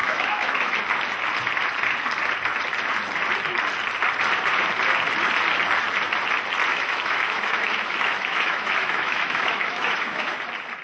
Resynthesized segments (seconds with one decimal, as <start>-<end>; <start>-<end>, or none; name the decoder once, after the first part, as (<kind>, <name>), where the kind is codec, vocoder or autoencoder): 0.0-0.8 (autoencoder, DAC-VAE); 6.7-10.3